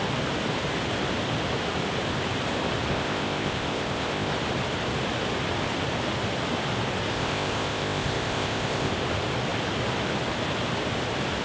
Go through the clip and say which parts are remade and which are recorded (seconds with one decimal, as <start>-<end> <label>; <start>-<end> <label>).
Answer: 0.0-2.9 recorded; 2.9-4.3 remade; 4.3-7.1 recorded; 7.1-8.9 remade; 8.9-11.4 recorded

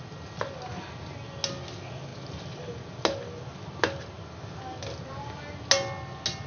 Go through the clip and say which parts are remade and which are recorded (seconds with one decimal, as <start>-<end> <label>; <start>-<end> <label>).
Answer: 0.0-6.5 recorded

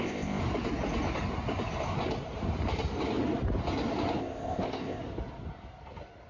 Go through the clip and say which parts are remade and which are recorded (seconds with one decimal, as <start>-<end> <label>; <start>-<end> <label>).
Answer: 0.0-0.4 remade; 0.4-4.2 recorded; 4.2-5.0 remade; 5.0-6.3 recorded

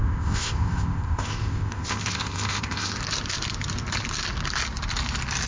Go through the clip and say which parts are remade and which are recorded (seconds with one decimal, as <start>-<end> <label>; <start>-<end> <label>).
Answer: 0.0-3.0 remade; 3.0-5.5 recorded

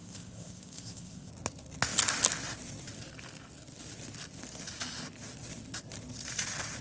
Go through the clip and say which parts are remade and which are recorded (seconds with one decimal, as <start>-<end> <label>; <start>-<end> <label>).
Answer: 0.0-1.3 remade; 1.3-6.8 recorded

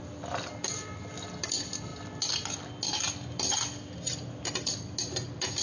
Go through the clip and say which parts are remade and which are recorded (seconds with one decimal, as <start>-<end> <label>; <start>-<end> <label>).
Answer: 0.0-5.6 recorded